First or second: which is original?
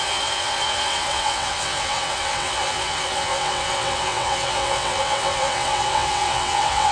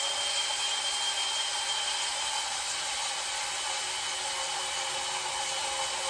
second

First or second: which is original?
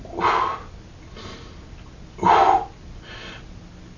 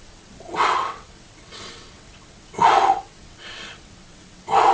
first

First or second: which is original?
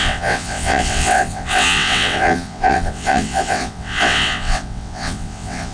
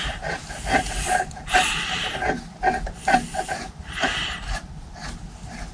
second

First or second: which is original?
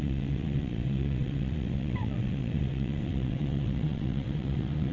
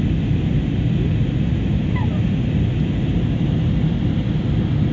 second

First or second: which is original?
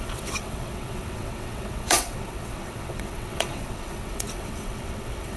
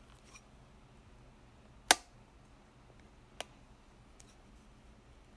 second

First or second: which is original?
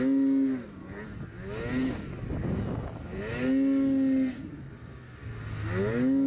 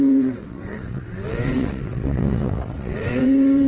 first